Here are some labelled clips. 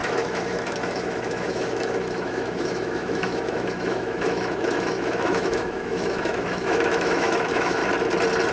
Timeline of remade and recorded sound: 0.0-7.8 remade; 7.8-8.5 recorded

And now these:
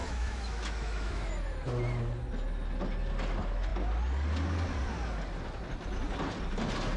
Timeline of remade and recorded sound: 0.0-1.3 remade; 1.3-7.0 recorded